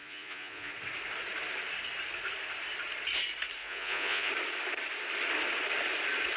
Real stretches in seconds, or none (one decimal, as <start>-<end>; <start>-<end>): 0.7-3.6; 4.3-6.4